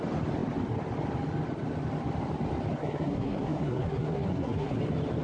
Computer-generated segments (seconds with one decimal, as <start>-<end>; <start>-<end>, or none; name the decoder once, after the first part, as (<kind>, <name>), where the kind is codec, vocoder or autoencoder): 2.8-4.8 (codec, SNAC)